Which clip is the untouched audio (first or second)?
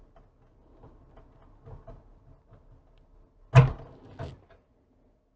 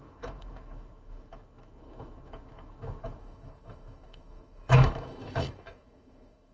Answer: first